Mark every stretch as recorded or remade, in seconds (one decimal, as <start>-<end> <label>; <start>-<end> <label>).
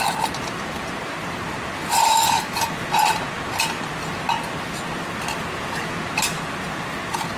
0.0-2.1 recorded; 2.1-2.7 remade; 2.7-7.4 recorded